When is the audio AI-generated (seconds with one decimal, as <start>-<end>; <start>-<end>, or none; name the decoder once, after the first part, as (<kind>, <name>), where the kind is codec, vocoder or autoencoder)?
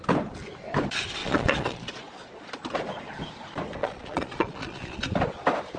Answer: 1.2-2.5 (vocoder, Vocos); 3.8-5.0